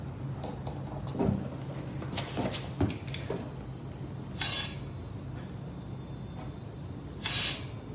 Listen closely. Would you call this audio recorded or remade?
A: recorded